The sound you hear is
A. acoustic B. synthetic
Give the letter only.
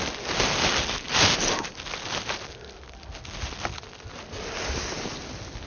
A